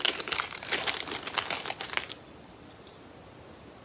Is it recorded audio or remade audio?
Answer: recorded